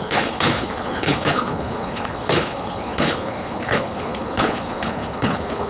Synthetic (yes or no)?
yes